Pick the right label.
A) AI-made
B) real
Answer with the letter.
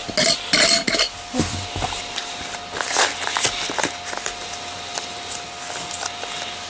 B